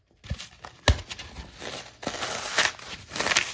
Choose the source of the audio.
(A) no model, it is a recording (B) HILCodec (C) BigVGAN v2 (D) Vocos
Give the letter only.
A